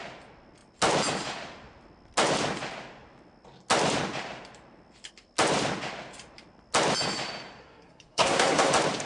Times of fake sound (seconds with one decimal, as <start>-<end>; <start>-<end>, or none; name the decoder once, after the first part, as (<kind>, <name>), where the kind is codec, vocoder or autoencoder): 7.6-8.7 (codec, SNAC)